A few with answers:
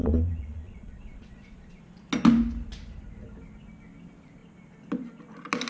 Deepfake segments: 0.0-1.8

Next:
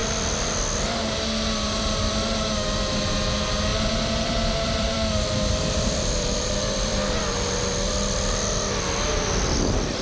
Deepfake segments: 3.7-6.5

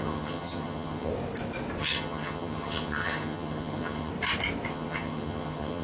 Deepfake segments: 0.0-1.1; 1.8-4.1; 4.7-5.8

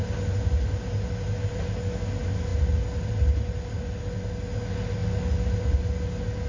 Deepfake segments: none

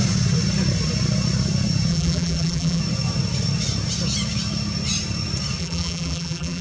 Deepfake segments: 1.9-2.8; 5.6-6.6

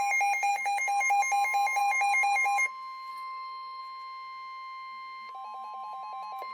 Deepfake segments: 0.5-1.2; 1.8-2.7; 3.1-3.8

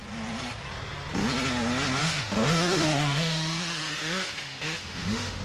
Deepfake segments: 2.0-5.4

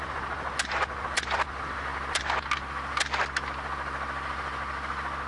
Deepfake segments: none